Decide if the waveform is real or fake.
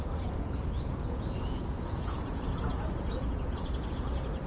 fake